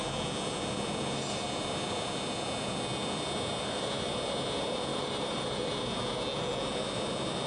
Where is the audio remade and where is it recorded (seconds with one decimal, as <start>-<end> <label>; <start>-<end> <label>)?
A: 0.0-4.9 recorded; 4.9-5.7 remade; 5.7-7.5 recorded